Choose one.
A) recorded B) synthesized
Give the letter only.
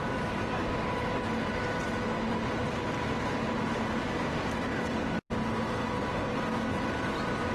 A